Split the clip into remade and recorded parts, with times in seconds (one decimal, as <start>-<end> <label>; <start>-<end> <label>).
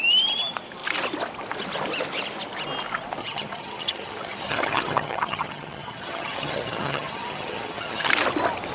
0.0-3.2 recorded; 3.2-8.1 remade; 8.1-8.7 recorded